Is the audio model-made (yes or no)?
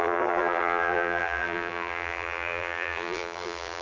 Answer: yes